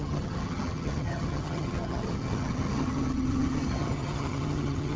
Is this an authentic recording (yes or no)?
no